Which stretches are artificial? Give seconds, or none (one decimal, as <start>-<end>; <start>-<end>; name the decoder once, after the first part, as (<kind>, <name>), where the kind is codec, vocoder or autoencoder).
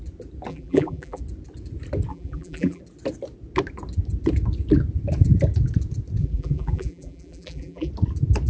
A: 0.5-1.2 (vocoder, BigVGAN v2); 2.1-2.8; 6.2-7.9